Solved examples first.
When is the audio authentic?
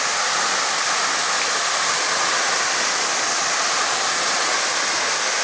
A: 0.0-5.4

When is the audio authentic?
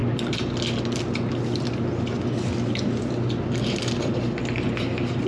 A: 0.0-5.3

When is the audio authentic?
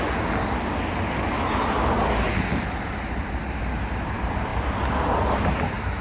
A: 0.0-6.0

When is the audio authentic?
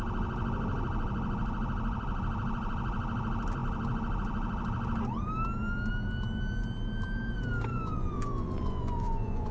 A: 0.0-7.7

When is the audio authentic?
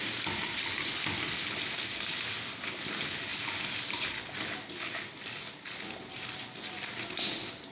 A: 0.0-7.7